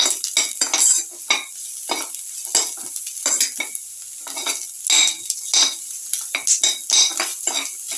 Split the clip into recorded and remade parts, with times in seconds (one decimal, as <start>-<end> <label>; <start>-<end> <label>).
0.0-8.0 recorded